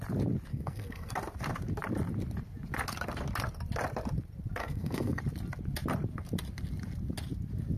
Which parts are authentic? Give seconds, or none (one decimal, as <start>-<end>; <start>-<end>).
0.0-0.5; 1.1-4.6; 5.2-7.8